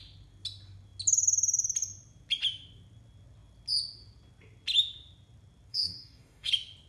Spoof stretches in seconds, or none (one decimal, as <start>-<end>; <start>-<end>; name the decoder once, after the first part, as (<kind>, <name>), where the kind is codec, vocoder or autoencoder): 5.7-6.5 (codec, DAC)